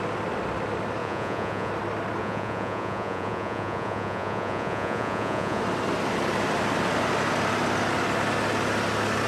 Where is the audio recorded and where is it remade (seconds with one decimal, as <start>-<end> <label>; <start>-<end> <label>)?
0.0-1.0 recorded; 1.0-1.7 remade; 1.7-2.2 recorded; 2.2-5.6 remade; 5.6-9.3 recorded